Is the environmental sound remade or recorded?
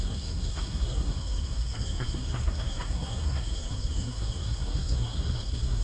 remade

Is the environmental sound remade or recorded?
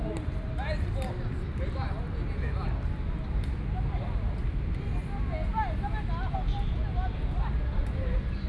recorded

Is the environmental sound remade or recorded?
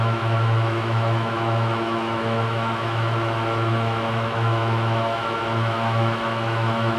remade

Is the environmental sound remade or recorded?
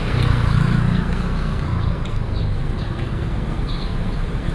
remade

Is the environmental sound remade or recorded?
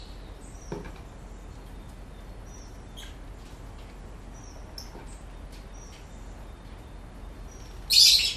recorded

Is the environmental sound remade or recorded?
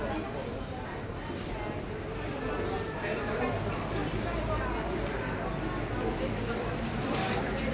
recorded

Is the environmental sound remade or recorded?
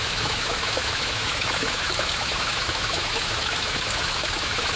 remade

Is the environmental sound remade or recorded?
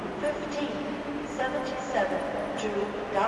recorded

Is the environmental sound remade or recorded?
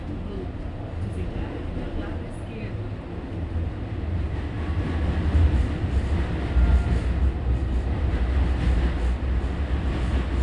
recorded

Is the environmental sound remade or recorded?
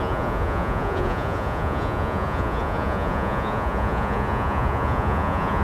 remade